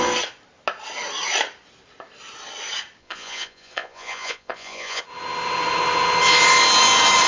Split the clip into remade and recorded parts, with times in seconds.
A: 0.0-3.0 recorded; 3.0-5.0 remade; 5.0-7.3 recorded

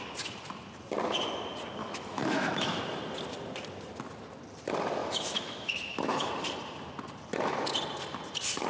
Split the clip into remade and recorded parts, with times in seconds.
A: 0.0-1.8 recorded; 1.8-2.8 remade; 2.8-5.0 recorded; 5.0-6.3 remade; 6.3-8.7 recorded

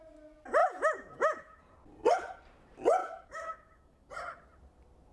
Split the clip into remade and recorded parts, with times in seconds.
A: 0.0-0.6 recorded; 0.6-1.6 remade; 1.6-3.0 recorded; 3.0-4.1 remade; 4.1-5.1 recorded

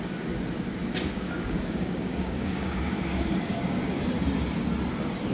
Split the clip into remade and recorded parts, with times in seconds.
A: 0.0-0.8 recorded; 0.8-4.0 remade; 4.0-5.3 recorded

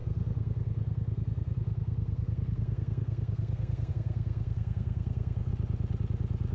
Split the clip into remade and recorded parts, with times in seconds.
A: 0.0-5.5 remade; 5.5-6.5 recorded

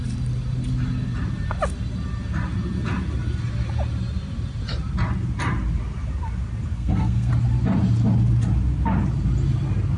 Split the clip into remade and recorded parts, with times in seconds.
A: 0.0-6.7 recorded; 6.7-7.3 remade; 7.3-10.0 recorded